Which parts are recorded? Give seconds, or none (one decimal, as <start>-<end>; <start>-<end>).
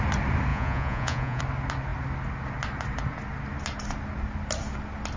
0.0-0.5; 1.4-5.2